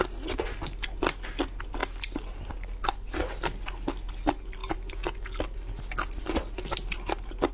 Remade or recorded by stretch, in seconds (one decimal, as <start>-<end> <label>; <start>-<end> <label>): 0.0-7.5 recorded